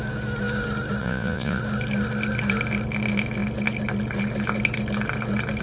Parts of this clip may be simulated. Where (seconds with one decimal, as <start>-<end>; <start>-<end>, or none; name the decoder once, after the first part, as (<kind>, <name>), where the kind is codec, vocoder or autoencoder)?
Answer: 1.0-1.6 (vocoder, Vocos)